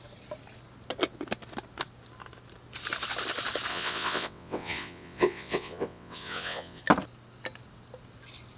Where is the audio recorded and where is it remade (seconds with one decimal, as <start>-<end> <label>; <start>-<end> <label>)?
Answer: 0.0-3.7 recorded; 3.7-6.8 remade; 6.8-8.6 recorded